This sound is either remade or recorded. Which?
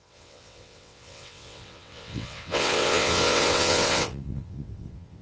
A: remade